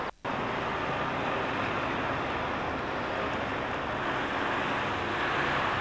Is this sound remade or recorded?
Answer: recorded